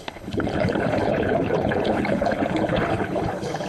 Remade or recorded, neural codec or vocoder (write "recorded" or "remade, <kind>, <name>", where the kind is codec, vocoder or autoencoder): remade, codec, HILCodec